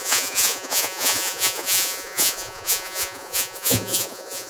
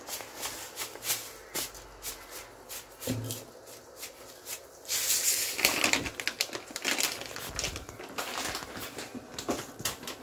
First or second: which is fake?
first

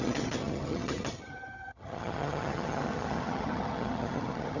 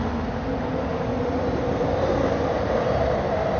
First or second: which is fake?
first